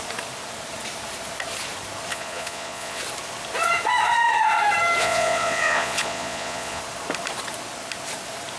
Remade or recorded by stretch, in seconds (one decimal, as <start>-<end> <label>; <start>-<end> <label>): 0.0-2.1 recorded; 2.1-3.0 remade; 3.0-5.0 recorded; 5.0-6.8 remade; 6.8-8.6 recorded